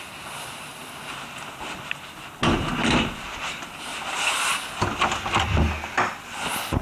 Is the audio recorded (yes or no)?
yes